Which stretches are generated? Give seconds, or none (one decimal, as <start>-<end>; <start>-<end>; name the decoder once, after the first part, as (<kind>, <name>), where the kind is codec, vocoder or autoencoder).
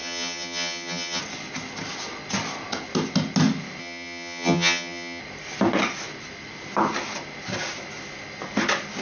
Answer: 0.0-1.2 (vocoder, HiFi-GAN); 3.8-5.2